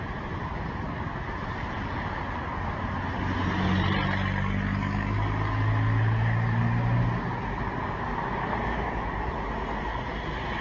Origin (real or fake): real